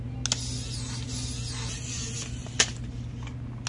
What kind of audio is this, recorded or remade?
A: recorded